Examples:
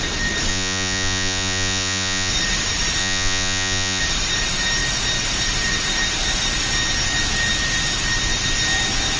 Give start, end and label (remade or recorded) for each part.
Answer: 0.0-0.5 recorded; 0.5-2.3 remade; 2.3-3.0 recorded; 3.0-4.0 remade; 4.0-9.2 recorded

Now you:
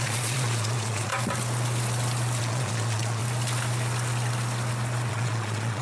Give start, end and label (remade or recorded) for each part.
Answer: 0.0-1.1 remade; 1.1-2.4 recorded; 2.4-3.2 remade; 3.2-5.1 recorded; 5.1-5.8 remade

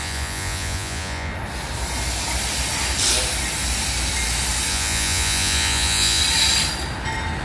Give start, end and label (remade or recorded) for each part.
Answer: 0.0-1.3 remade; 1.3-4.7 recorded; 4.7-6.2 remade; 6.2-7.4 recorded

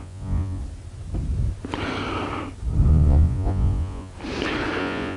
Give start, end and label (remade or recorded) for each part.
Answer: 0.0-0.6 remade; 0.6-2.9 recorded; 2.9-4.1 remade; 4.1-4.8 recorded; 4.8-5.2 remade

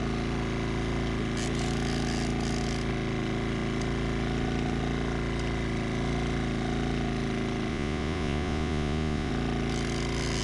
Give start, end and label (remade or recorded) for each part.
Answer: 0.0-7.7 recorded; 7.7-9.3 remade; 9.3-10.4 recorded

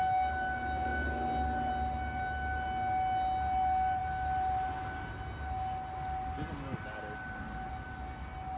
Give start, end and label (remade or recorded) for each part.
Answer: 0.0-8.6 recorded

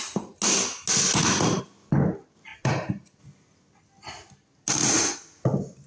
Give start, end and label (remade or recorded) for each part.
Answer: 0.0-1.1 recorded; 1.1-1.6 remade; 1.6-4.8 recorded; 4.8-5.4 remade; 5.4-5.9 recorded